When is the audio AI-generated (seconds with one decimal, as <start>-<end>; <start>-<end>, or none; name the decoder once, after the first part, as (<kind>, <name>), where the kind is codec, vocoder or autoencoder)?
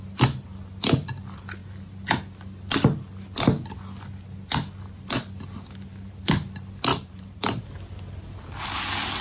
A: 6.9-7.7 (vocoder, BigVGAN v2)